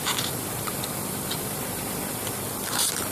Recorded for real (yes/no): no